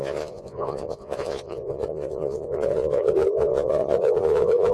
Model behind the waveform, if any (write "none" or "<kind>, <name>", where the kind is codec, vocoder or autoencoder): vocoder, Vocos